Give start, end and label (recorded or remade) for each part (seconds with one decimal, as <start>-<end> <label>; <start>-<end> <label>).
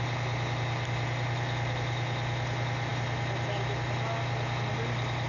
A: 0.0-5.3 recorded